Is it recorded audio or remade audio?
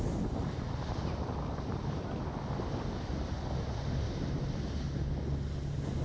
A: recorded